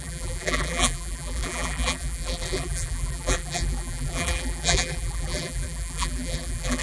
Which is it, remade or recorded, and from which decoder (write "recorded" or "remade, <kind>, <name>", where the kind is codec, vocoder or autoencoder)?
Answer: remade, vocoder, BigVGAN v2